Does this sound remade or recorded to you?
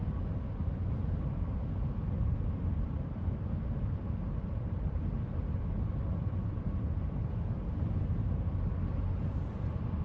recorded